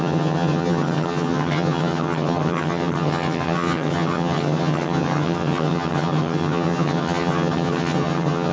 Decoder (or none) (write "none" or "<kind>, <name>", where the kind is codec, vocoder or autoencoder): vocoder, HiFi-GAN